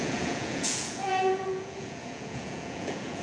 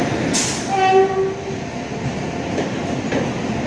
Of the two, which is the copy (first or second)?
first